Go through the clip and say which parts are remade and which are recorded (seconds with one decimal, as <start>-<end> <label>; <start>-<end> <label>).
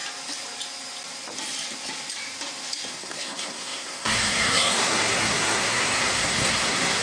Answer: 0.0-2.9 recorded; 2.9-7.0 remade